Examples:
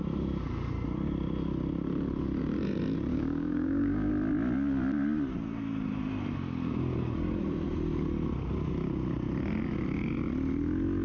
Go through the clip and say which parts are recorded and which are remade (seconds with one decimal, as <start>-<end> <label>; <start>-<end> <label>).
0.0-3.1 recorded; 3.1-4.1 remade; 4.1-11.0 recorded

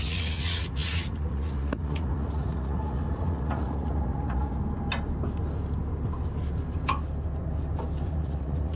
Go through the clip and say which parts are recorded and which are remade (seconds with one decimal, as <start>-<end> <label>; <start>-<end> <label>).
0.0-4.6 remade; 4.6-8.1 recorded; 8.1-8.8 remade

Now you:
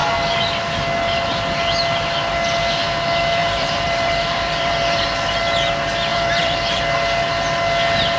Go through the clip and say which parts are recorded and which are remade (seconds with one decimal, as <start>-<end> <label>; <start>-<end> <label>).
0.0-3.4 recorded; 3.4-5.4 remade; 5.4-6.1 recorded; 6.1-6.8 remade; 6.8-8.2 recorded